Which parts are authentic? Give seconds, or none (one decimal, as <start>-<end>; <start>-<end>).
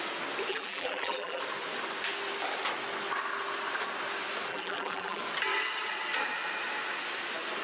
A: 0.0-0.5; 1.4-4.5; 5.2-7.6